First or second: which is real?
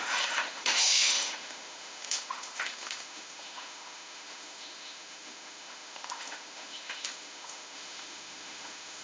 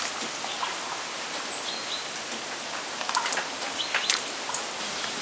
second